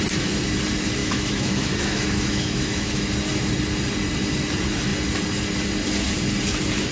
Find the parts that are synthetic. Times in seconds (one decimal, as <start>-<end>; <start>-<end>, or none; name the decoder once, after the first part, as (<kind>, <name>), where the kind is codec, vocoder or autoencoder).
1.0-3.1 (autoencoder, DAC-VAE)